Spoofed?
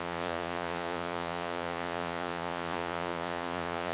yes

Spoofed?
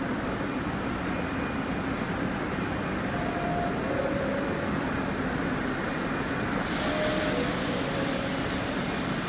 no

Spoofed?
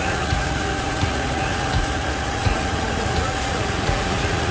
yes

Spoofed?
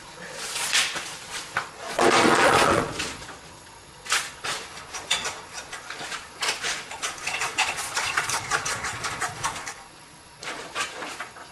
yes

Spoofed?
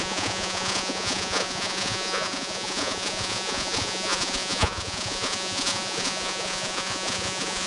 yes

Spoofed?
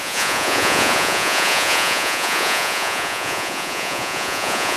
yes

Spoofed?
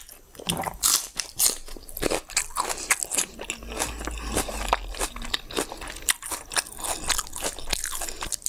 no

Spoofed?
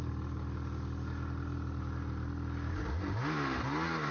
no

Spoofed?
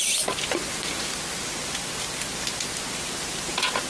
no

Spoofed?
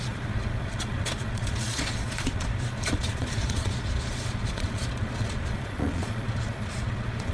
yes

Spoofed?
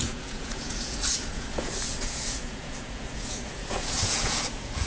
yes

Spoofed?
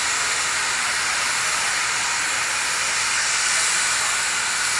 no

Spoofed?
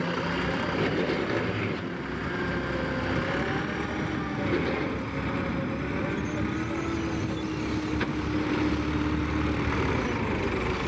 no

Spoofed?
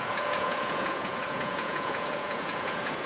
yes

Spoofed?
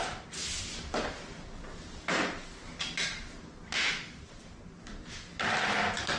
no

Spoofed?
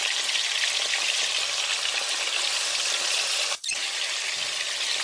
no